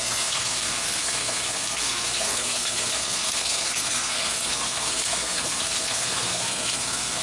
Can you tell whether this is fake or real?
fake